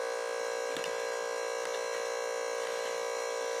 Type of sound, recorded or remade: recorded